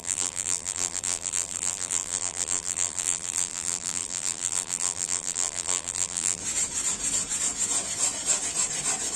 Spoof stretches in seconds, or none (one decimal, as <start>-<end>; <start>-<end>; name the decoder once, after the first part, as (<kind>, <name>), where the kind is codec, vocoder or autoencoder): 0.0-6.4 (vocoder, BigVGAN v2)